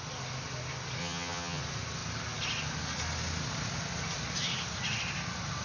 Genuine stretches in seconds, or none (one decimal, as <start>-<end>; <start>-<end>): 0.0-1.0; 1.6-5.6